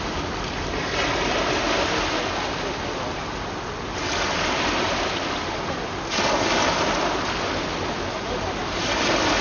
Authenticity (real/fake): real